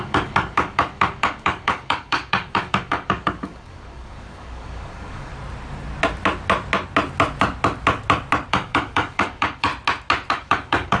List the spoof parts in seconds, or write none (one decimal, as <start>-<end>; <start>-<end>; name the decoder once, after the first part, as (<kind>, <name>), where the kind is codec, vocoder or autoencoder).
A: 0.0-5.3 (codec, DAC); 8.5-9.7; 10.3-11.0